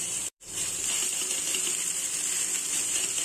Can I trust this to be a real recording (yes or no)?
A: no